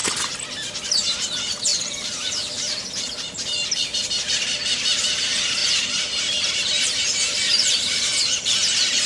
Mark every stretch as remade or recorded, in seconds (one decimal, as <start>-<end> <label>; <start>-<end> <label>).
0.0-1.7 recorded; 1.7-4.0 remade; 4.0-5.6 recorded; 5.6-8.0 remade; 8.0-9.1 recorded